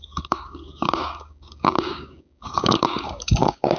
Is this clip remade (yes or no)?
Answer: yes